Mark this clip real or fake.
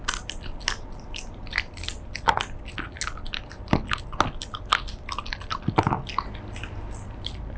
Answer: real